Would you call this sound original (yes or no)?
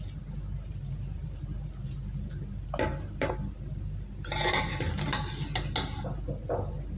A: yes